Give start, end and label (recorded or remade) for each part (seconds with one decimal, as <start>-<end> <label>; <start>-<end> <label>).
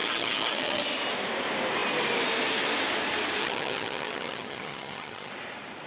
0.0-0.8 remade; 0.8-3.4 recorded; 3.4-5.3 remade; 5.3-5.9 recorded